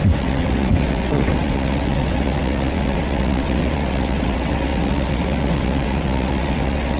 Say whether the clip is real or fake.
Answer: fake